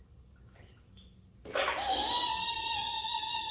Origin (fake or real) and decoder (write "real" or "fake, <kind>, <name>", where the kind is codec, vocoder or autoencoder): real